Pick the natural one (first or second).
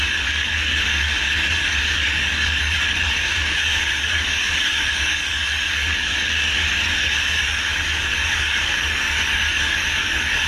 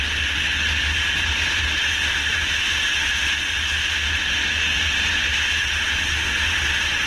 second